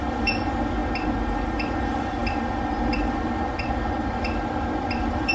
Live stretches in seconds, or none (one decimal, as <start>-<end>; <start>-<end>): 0.8-1.3